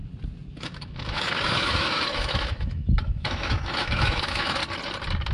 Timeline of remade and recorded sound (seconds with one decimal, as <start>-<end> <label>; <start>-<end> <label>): 0.0-0.5 recorded; 0.5-4.6 remade; 4.6-5.3 recorded